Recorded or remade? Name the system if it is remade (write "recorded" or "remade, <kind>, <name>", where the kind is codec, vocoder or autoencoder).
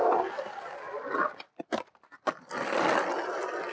recorded